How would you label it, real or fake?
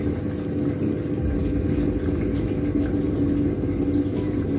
real